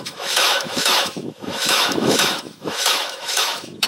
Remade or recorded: remade